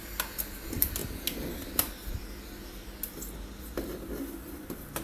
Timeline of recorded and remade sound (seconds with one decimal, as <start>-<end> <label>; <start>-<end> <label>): 0.0-5.0 recorded